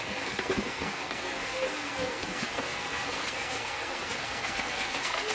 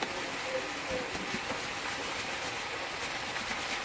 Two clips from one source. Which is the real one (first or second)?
second